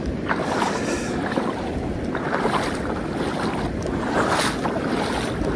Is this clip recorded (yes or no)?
yes